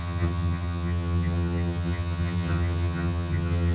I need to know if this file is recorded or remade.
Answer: remade